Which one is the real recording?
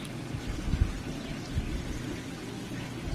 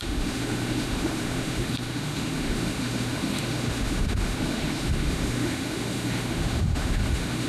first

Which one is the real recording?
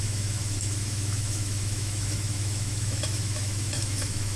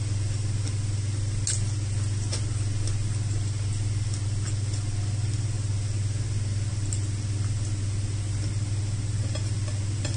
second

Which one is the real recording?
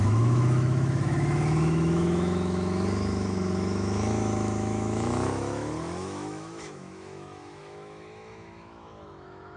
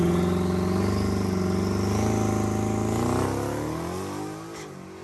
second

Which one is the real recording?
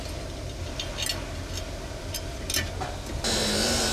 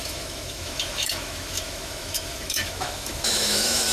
first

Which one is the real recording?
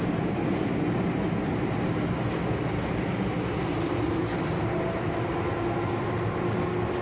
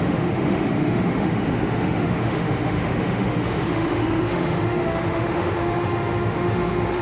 first